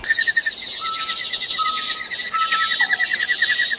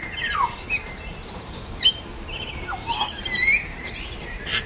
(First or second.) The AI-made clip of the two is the second